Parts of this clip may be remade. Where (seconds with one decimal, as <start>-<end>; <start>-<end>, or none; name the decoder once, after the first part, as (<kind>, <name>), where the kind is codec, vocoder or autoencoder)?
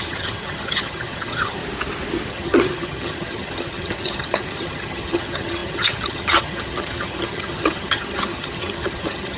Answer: 0.0-1.6 (vocoder, HiFi-GAN); 2.3-9.4